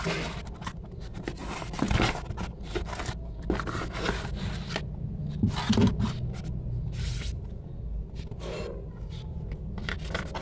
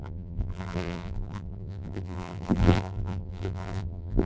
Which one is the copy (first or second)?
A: second